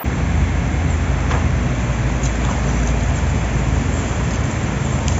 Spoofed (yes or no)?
no